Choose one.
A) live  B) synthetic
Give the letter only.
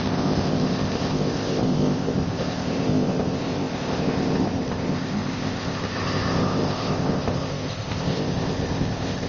B